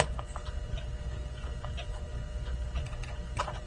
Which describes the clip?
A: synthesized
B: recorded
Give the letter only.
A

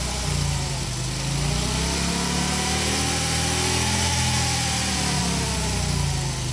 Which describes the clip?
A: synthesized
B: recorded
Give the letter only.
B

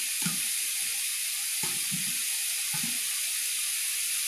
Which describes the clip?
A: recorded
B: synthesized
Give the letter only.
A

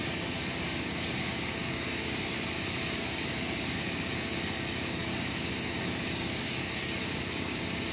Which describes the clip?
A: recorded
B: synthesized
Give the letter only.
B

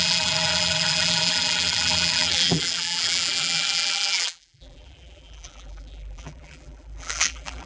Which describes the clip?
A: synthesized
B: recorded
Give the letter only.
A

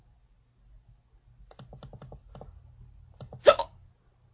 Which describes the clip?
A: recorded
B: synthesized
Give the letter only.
A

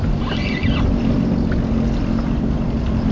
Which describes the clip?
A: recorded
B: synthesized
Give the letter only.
A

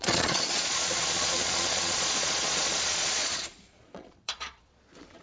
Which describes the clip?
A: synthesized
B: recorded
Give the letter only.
A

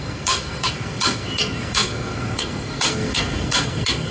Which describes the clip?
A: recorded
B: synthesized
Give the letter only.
B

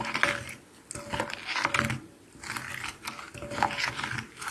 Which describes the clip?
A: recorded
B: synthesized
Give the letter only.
A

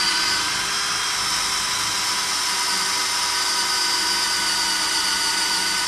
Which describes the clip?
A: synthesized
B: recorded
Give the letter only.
B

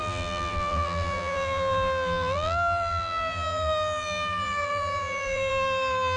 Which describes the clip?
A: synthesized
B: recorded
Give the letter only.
A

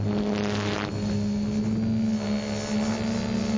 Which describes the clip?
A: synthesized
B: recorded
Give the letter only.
B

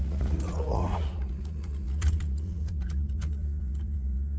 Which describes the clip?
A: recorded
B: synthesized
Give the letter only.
B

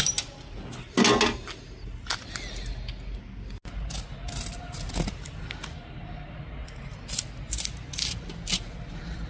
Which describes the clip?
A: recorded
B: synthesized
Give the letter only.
A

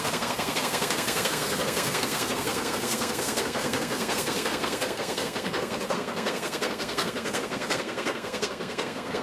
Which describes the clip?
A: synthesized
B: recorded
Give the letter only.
A